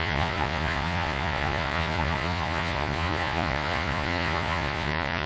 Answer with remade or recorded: remade